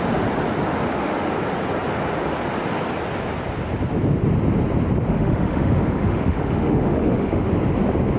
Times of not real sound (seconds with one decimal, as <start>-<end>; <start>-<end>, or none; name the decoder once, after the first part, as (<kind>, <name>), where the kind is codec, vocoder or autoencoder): 0.7-1.3 (autoencoder, DAC-VAE); 5.1-7.5